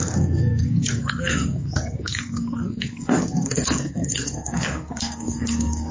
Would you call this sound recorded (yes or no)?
no